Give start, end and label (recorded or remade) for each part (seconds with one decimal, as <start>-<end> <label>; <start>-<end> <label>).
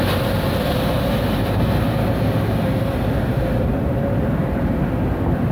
0.0-5.5 recorded